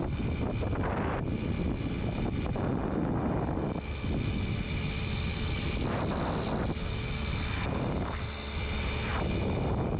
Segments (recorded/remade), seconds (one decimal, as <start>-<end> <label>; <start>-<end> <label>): 0.0-10.0 recorded